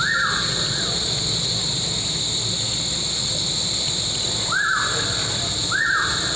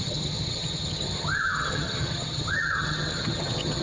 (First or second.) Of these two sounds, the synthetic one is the second